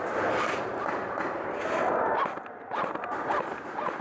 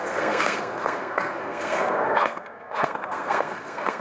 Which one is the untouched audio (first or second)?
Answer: first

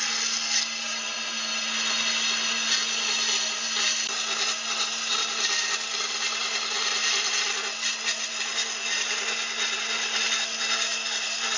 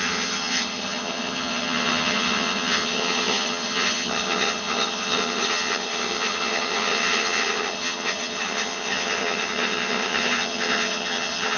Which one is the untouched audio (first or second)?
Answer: first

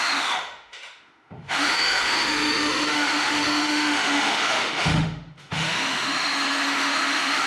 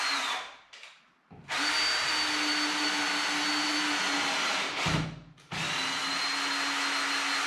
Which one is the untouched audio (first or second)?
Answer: second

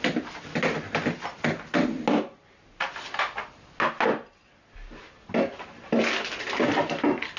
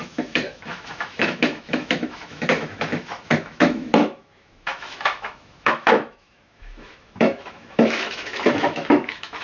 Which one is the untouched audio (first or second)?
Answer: first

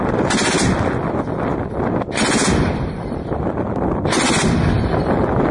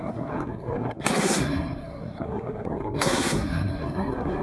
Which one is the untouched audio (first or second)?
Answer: first